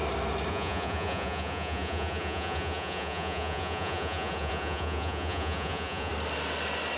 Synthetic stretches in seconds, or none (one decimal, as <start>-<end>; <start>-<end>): 0.5-6.1